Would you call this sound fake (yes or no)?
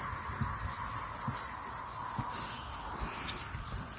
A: no